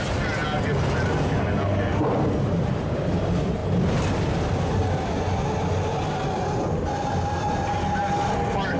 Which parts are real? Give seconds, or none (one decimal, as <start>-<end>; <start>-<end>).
0.0-8.8